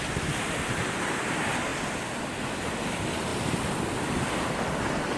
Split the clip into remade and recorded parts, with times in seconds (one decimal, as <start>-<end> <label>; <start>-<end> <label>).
0.0-5.2 recorded